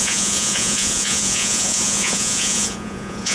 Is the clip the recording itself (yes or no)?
no